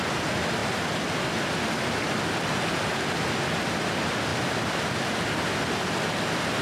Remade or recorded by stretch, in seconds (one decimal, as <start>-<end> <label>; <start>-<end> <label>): 0.0-6.6 recorded